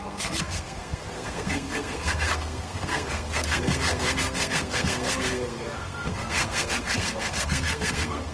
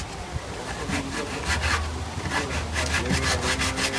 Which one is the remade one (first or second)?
first